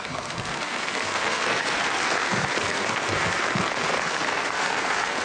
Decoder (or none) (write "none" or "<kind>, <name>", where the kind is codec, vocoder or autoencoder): codec, SNAC